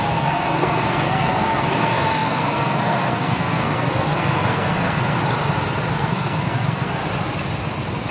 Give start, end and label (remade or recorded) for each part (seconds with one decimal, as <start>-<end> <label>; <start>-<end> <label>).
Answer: 0.0-5.2 remade; 5.2-5.9 recorded; 5.9-7.0 remade; 7.0-8.1 recorded